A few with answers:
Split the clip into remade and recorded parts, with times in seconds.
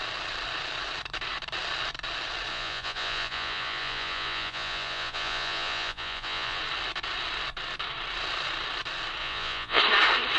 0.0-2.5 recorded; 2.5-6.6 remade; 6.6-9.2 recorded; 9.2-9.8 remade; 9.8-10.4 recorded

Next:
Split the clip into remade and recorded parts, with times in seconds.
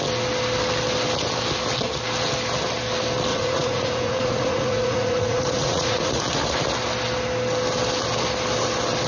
0.0-3.3 recorded; 3.3-6.2 remade; 6.2-9.1 recorded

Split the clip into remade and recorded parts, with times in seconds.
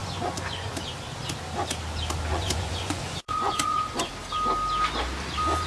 0.0-0.7 remade; 0.7-2.3 recorded; 2.3-4.1 remade; 4.1-5.7 recorded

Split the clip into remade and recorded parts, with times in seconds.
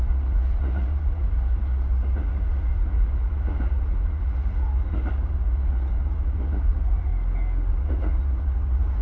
0.0-7.1 remade; 7.1-7.7 recorded; 7.7-9.0 remade